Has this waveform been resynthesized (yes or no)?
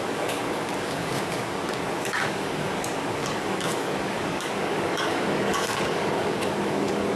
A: yes